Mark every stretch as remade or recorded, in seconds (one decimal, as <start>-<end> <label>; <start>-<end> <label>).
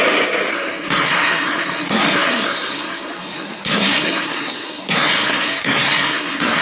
0.0-0.5 recorded; 0.5-6.6 remade